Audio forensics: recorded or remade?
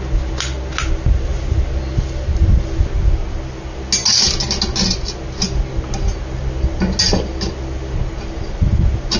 recorded